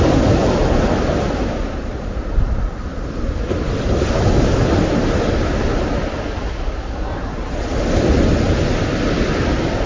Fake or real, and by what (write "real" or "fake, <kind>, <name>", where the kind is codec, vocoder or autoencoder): real